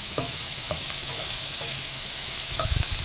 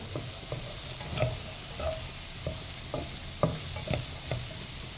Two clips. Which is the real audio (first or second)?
second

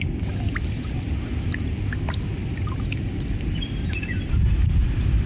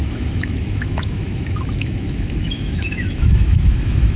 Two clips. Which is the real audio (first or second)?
first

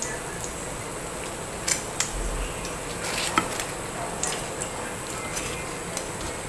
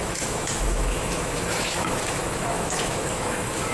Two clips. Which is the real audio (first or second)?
first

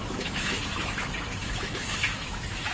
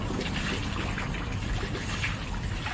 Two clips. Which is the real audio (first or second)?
second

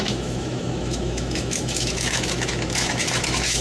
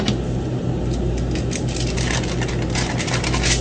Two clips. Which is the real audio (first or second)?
second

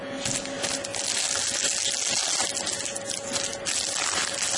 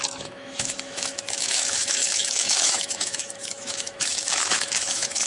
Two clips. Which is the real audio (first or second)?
first